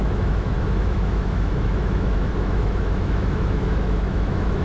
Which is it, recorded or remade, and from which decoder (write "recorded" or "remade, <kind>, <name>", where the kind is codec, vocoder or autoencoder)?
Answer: remade, autoencoder, DAC-VAE